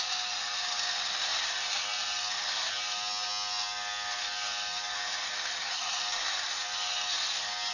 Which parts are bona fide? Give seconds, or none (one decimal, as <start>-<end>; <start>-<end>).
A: 0.0-5.5; 6.0-7.7